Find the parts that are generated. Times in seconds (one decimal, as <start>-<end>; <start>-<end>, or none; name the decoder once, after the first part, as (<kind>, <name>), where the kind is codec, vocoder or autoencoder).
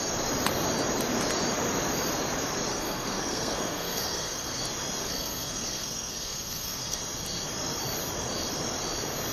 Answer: 2.7-4.6 (codec, SNAC); 5.0-7.0